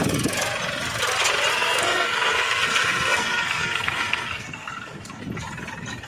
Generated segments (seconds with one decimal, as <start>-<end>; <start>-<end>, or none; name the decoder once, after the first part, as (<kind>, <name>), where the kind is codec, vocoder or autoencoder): 1.5-5.2 (codec, SNAC)